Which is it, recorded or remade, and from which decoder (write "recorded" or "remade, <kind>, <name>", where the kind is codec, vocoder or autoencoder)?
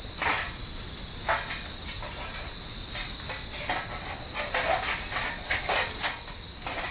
recorded